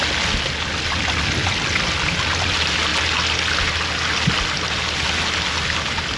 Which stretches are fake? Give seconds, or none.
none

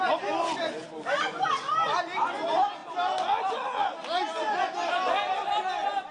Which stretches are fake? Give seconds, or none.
none